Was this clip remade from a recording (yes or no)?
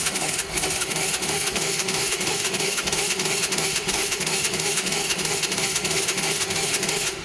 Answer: yes